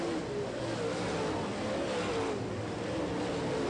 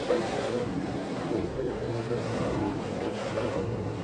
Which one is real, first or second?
first